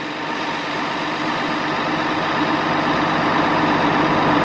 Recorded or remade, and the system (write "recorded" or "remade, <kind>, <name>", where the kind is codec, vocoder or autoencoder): recorded